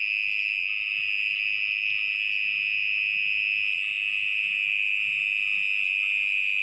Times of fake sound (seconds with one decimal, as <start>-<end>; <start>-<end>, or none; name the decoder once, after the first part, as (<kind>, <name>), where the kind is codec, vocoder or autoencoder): none